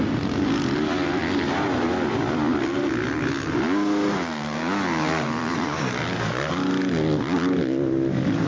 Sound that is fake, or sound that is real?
real